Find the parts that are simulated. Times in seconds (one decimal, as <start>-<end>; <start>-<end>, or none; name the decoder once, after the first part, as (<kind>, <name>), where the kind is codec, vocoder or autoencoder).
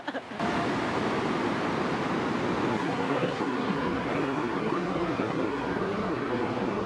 2.7-6.9 (codec, SNAC)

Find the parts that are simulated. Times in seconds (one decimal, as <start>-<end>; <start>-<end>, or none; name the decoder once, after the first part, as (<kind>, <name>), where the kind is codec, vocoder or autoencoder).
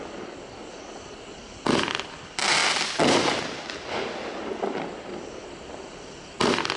0.0-6.8 (vocoder, BigVGAN v2)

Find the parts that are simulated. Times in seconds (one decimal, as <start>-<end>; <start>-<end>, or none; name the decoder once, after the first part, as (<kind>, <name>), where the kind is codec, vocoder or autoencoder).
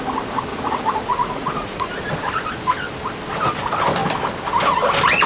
0.5-2.1 (vocoder, Vocos)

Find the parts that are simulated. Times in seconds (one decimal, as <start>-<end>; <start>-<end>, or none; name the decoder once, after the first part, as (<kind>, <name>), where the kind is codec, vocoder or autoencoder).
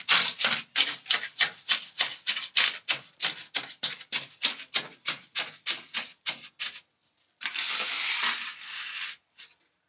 3.2-3.9 (vocoder, BigVGAN v2)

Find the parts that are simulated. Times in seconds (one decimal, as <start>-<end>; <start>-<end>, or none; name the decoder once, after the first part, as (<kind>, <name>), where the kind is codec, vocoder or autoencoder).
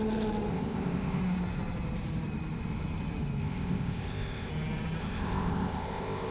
0.5-1.2 (codec, ZipCodec); 3.4-4.5; 5.0-6.3